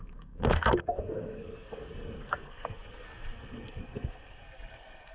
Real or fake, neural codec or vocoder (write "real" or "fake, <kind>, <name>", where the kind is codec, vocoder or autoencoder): fake, codec, SNAC